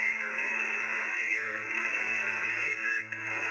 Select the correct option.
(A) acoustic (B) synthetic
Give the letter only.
B